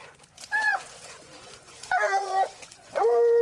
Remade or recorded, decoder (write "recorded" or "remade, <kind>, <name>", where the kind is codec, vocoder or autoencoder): remade, vocoder, Vocos